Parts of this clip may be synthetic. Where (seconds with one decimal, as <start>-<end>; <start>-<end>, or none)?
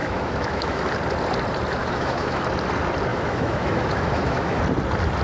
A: 0.0-0.8; 1.8-2.4; 3.1-4.6